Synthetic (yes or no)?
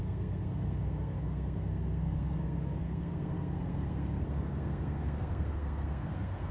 yes